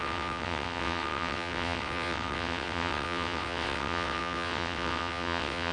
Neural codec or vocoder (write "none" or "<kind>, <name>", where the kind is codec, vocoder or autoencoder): vocoder, WaveNeXt